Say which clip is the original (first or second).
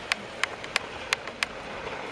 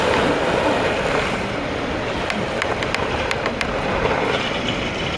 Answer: first